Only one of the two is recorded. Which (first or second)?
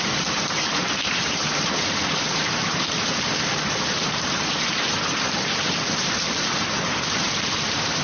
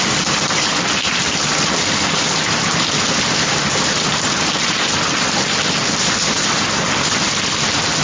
second